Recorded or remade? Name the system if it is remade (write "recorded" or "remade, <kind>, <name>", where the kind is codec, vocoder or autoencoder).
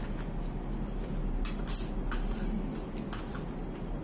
recorded